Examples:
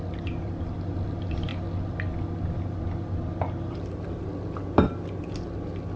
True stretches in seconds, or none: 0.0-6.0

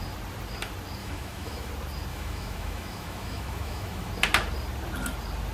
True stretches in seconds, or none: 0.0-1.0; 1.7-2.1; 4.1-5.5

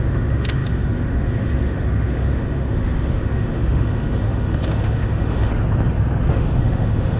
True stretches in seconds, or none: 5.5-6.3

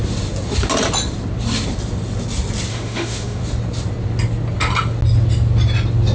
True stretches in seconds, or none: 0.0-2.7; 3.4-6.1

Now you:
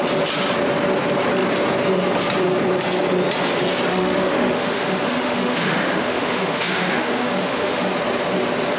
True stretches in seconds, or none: 0.0-3.9; 7.9-8.8